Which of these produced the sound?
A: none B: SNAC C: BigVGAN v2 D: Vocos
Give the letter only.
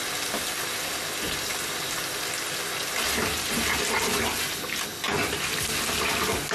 A